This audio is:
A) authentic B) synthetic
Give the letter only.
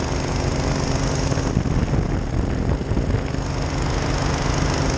A